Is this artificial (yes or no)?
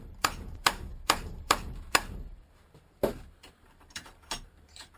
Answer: yes